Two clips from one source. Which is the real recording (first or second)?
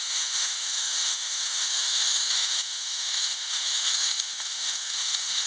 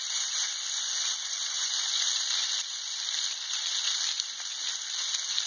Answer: second